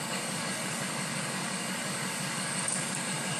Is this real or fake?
fake